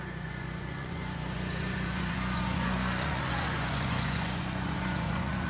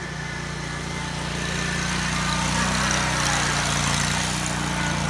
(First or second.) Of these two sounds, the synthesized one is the first